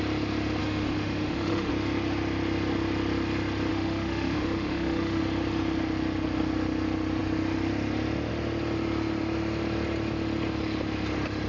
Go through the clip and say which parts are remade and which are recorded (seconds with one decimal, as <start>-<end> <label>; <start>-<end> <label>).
0.0-0.6 recorded; 0.6-1.7 remade; 1.7-3.7 recorded; 3.7-5.2 remade; 5.2-11.5 recorded